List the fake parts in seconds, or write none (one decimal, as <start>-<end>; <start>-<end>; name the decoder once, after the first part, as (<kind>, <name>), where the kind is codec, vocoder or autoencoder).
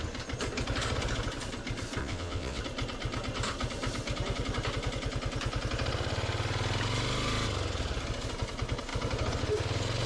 2.0-2.6 (vocoder, WaveNeXt)